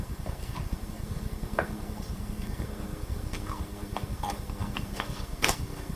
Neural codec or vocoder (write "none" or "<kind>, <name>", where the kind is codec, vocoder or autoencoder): codec, SNAC